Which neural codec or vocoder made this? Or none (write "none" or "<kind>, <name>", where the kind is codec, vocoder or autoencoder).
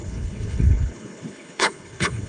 codec, HILCodec